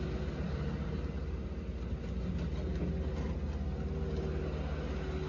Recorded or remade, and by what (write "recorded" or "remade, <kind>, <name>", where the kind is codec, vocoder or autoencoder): recorded